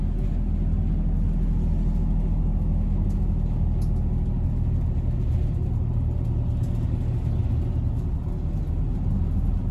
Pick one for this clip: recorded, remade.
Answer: recorded